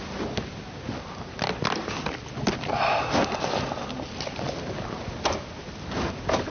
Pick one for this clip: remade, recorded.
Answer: recorded